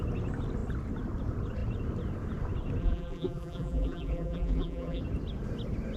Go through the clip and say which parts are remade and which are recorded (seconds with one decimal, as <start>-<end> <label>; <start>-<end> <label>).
0.0-2.8 recorded; 2.8-5.0 remade; 5.0-6.0 recorded